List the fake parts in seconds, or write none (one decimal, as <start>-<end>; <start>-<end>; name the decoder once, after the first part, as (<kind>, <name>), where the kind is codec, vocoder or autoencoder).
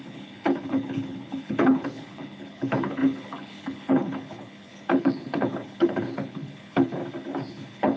0.0-7.0 (codec, HILCodec); 7.5-8.0